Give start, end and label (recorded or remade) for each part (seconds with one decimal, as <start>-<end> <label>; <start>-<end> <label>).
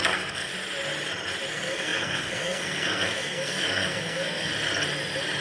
0.0-0.5 remade; 0.5-1.5 recorded; 1.5-4.5 remade; 4.5-5.4 recorded